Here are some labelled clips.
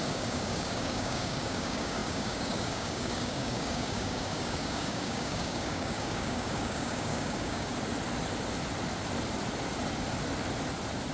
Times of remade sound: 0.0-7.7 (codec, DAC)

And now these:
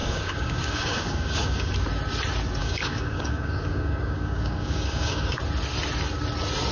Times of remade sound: 0.0-1.7 (codec, DAC); 2.6-5.4

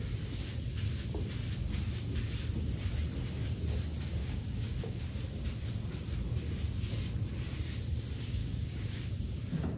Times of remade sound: 4.2-5.0 (codec, DAC); 8.4-9.1

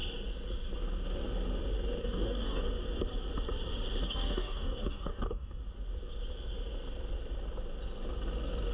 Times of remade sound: 2.0-2.6 (codec, DAC); 4.0-5.6

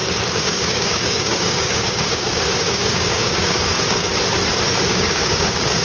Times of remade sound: 0.0-4.1 (codec, DAC); 4.9-5.8

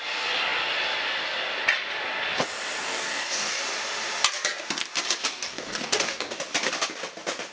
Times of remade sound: 2.8-3.6 (codec, DAC); 5.2-6.4

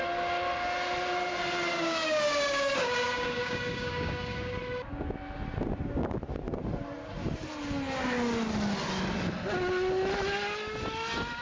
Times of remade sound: 1.7-4.6 (codec, DAC)